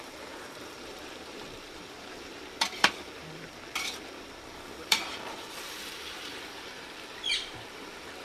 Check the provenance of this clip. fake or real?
fake